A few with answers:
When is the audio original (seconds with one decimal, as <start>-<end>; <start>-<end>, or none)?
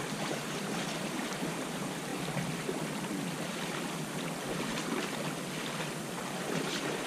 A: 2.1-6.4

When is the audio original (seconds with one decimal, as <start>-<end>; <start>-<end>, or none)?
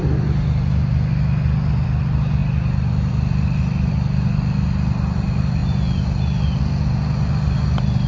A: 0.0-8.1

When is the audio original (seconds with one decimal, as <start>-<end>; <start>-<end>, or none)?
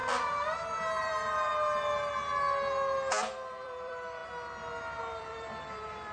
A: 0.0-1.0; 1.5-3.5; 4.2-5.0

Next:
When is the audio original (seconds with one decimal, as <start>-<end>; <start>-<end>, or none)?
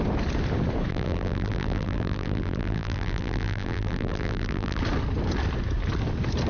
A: 0.0-0.9; 4.8-6.5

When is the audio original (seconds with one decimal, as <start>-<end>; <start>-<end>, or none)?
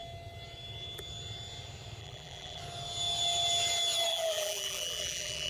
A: 0.0-2.0; 2.6-4.1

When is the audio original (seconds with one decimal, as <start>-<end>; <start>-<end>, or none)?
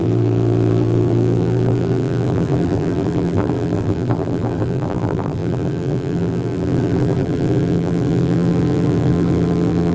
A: none